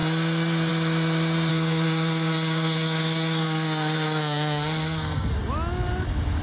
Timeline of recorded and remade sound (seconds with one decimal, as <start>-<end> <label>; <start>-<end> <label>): 0.0-1.5 recorded; 1.5-5.3 remade; 5.3-6.4 recorded